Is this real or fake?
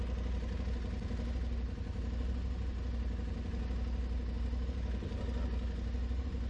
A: real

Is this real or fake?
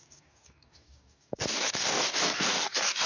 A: fake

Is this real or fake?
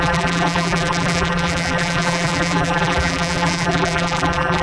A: fake